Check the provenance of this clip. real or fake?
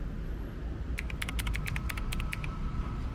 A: real